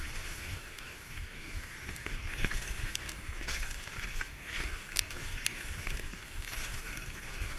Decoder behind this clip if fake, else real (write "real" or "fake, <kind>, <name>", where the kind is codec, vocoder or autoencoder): fake, codec, DAC